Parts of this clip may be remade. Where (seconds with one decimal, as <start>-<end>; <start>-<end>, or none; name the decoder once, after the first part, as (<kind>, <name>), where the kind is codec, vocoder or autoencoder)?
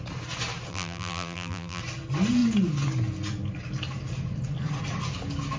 0.7-1.8 (vocoder, BigVGAN v2)